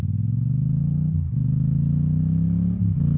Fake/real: real